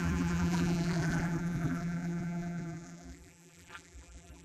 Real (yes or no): no